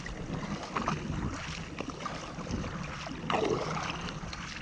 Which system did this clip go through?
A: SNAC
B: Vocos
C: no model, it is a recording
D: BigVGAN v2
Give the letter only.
C